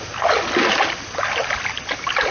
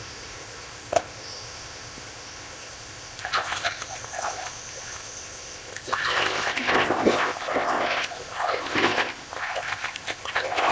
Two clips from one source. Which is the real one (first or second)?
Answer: first